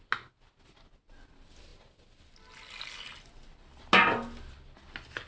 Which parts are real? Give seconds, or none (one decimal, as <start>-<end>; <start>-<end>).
0.0-5.3